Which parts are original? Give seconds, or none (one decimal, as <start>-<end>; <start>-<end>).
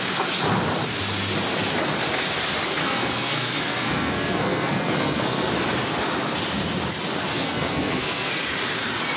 0.0-2.8; 5.5-7.3; 8.3-9.2